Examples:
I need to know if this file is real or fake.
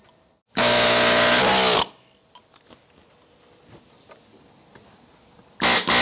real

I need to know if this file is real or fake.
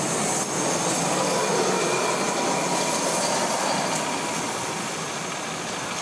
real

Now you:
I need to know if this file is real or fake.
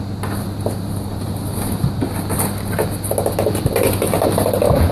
real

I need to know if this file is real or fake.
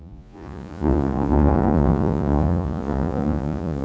fake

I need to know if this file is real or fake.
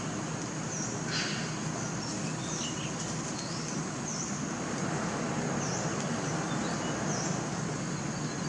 real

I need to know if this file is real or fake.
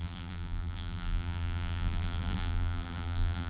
fake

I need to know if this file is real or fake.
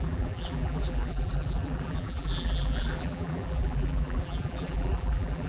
fake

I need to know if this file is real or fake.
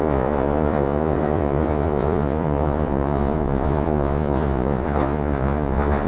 fake